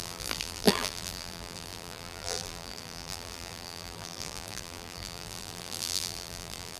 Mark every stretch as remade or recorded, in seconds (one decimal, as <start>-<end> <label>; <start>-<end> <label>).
0.0-6.8 remade